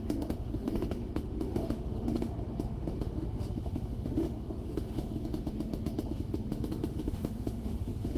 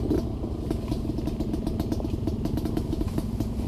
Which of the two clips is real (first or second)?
second